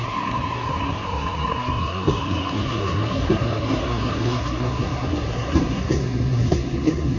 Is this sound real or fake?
fake